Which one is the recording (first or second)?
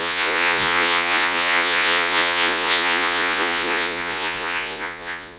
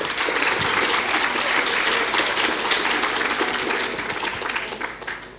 second